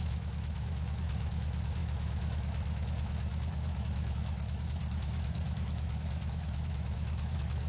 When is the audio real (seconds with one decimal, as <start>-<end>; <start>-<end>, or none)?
none

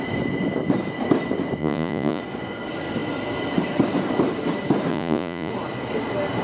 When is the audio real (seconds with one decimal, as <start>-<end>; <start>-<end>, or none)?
0.0-1.6; 2.2-4.9; 5.5-6.4

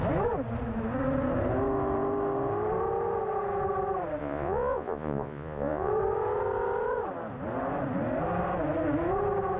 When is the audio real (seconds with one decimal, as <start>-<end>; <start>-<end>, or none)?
0.0-4.2; 5.9-9.6

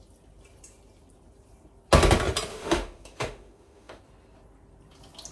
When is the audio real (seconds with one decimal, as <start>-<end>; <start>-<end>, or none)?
0.0-2.5; 4.0-5.3

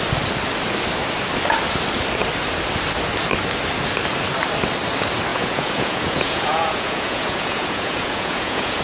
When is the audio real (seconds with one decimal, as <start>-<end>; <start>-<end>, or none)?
0.0-5.3